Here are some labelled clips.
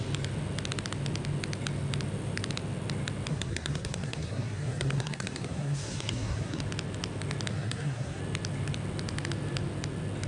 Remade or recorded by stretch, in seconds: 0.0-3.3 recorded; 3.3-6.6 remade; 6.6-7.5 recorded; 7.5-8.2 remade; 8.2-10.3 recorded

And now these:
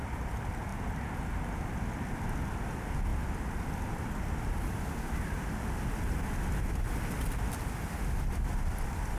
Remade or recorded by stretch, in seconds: 0.0-9.2 recorded

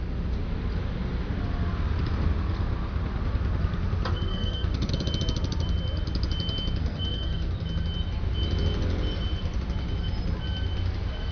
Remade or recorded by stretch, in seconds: 0.0-4.3 recorded; 4.3-4.9 remade; 4.9-6.8 recorded; 6.8-7.5 remade; 7.5-11.3 recorded

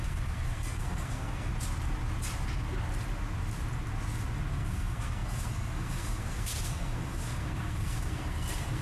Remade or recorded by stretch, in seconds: 0.0-1.5 remade; 1.5-4.5 recorded; 4.5-8.8 remade

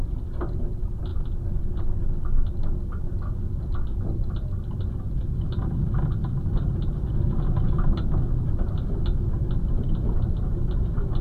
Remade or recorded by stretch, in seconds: 0.0-11.2 recorded

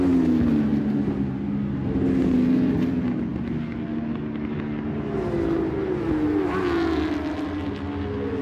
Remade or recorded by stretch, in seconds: 0.0-8.4 recorded

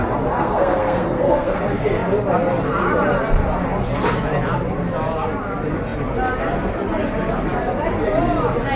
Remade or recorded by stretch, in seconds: 0.0-0.4 recorded; 0.4-1.6 remade; 1.6-8.8 recorded